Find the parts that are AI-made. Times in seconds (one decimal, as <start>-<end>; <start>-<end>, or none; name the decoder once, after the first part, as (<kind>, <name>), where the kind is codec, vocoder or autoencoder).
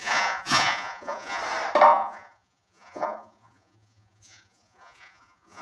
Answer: 0.0-1.4 (vocoder, Vocos); 1.9-5.6